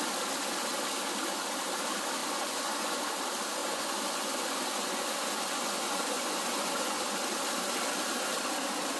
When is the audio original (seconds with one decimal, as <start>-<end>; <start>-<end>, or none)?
0.0-2.2; 3.0-3.6; 7.1-9.0